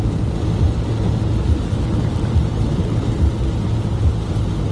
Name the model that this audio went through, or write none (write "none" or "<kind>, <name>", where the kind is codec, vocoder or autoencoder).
none